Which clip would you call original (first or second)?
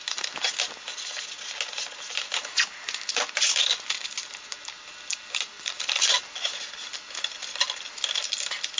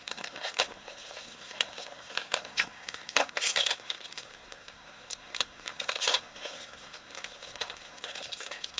first